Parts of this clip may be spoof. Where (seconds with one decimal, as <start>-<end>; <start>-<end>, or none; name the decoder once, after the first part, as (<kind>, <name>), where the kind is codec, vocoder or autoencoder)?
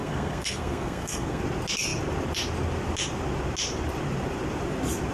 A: 0.0-1.4 (codec, SNAC)